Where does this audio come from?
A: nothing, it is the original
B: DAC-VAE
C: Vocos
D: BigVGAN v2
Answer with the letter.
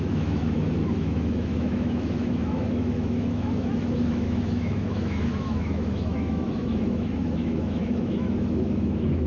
B